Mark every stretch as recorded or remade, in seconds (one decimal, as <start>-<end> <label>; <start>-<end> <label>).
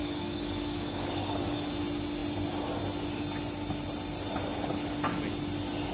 0.0-1.7 remade; 1.7-5.9 recorded